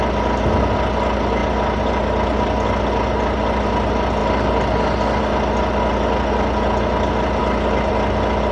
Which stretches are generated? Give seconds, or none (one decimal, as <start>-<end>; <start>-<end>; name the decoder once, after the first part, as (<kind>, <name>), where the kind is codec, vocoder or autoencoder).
none